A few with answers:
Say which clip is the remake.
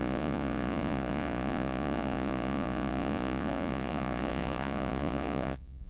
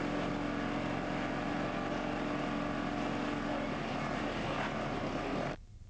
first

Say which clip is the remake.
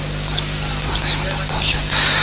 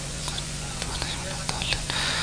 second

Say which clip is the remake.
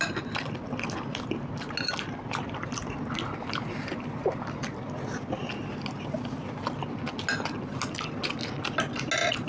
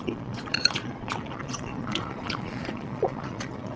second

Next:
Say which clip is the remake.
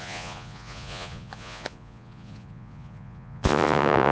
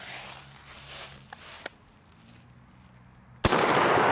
first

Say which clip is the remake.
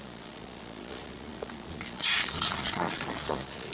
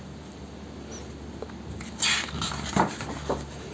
first